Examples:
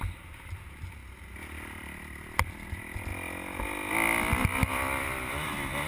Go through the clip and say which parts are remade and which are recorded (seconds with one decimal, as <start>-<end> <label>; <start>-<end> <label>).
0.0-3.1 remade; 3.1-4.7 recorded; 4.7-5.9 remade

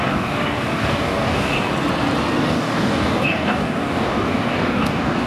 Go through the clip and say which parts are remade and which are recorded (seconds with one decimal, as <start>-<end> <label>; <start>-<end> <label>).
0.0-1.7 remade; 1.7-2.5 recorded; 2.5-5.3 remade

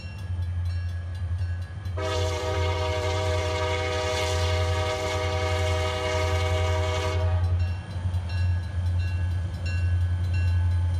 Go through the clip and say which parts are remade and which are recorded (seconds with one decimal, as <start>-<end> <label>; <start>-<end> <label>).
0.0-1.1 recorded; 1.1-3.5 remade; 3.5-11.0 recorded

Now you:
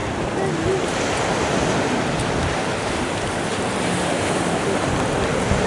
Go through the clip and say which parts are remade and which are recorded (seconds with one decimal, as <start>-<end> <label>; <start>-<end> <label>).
0.0-5.7 recorded